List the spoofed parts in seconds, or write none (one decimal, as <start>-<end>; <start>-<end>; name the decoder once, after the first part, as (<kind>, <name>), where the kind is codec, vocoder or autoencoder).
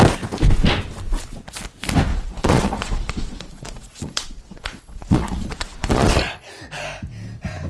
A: 2.1-6.5 (vocoder, Vocos)